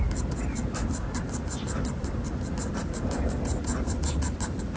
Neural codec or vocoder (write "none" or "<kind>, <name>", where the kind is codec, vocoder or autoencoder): none